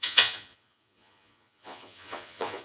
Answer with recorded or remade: remade